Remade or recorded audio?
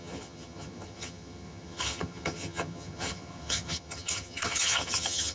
remade